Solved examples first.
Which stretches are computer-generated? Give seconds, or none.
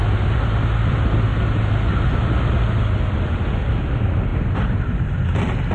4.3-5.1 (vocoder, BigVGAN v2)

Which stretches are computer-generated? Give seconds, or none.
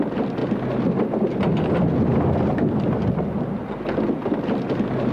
none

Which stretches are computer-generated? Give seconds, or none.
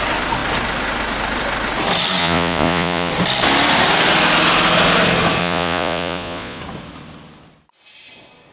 2.2-3.1 (vocoder, Vocos); 5.4-6.6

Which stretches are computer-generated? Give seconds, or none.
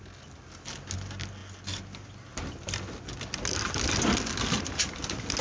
none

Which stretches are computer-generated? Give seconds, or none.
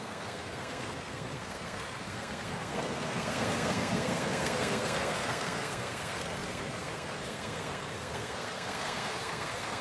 0.0-9.8 (codec, SNAC)